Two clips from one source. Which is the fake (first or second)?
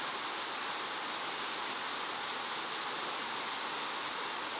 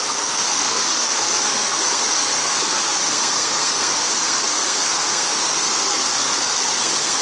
second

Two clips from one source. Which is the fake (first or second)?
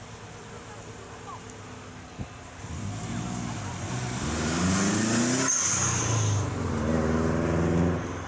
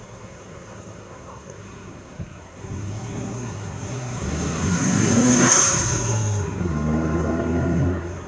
second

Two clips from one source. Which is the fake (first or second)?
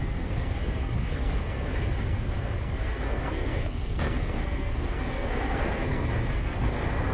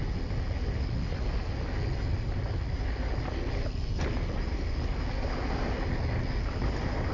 first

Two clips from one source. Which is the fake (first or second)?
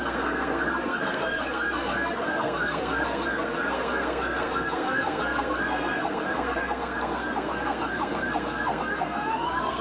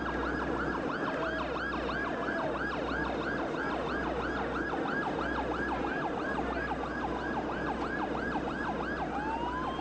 first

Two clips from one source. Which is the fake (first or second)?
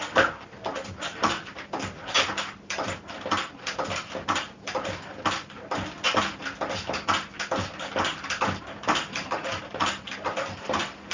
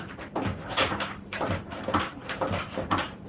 second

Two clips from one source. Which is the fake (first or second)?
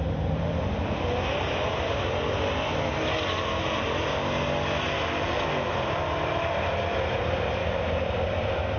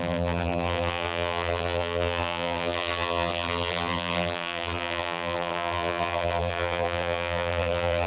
second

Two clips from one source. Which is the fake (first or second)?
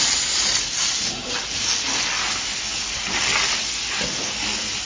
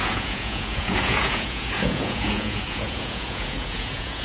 second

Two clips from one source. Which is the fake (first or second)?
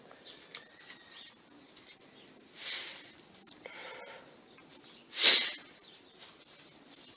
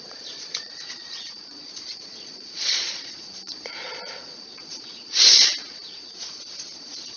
second